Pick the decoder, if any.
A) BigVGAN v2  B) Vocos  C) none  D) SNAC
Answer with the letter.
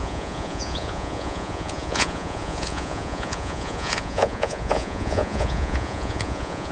B